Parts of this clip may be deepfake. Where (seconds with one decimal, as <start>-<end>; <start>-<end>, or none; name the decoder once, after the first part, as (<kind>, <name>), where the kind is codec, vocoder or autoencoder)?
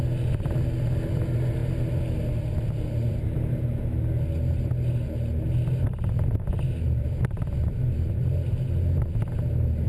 none